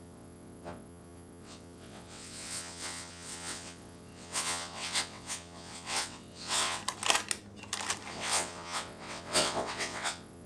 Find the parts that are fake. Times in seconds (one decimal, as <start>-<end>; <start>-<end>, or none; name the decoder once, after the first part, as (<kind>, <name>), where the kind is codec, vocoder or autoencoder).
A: 0.0-6.8 (vocoder, WaveNeXt); 8.1-10.5